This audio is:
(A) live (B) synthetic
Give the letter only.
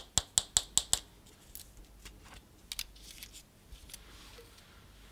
A